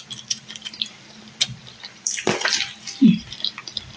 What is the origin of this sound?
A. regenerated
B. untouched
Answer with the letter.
A